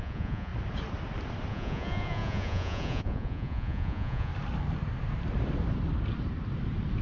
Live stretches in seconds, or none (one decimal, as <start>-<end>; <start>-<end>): 0.5-1.5; 4.3-7.0

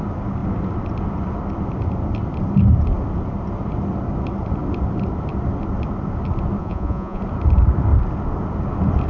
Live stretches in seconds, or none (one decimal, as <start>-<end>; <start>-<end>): 0.0-6.6; 7.2-9.1

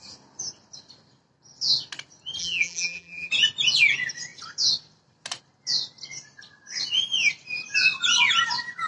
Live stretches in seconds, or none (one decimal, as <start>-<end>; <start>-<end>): 0.0-2.4; 3.3-8.9

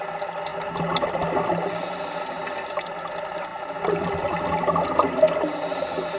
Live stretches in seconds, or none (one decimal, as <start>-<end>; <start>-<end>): 0.0-6.2

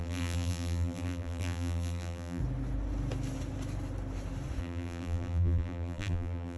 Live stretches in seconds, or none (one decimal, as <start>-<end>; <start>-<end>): 2.4-4.6

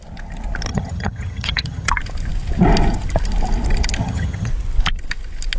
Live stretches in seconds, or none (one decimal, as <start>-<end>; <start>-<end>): 0.0-0.7; 1.9-4.0; 4.5-5.6

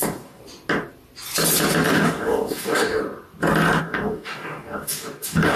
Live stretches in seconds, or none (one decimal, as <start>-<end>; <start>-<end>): 0.4-1.9; 3.0-3.8

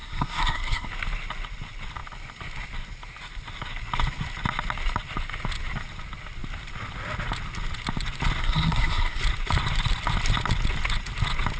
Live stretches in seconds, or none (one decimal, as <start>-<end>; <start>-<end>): 0.9-8.4; 9.2-11.6